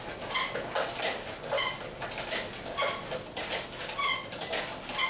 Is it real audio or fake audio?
real